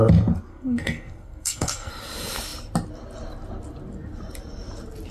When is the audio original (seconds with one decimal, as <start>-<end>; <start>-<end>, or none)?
0.0-0.5; 1.9-5.1

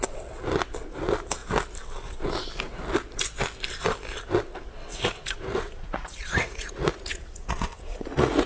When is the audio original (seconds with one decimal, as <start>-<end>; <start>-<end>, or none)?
0.0-4.9

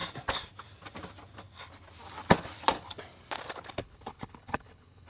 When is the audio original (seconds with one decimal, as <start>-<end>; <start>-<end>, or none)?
0.0-3.8

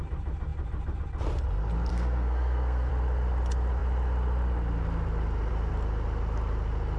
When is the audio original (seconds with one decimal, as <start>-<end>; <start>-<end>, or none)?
0.0-1.9; 2.9-7.0